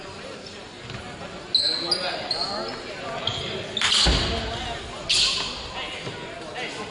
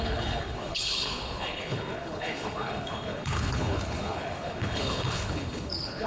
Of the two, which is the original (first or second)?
first